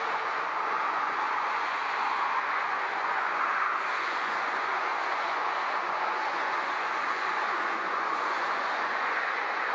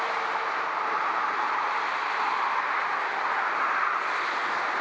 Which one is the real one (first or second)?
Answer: second